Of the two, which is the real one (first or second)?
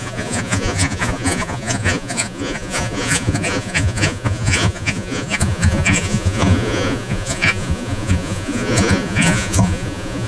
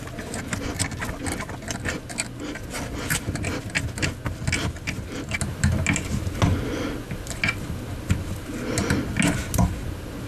second